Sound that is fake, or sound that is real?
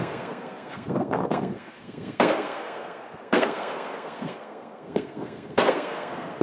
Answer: fake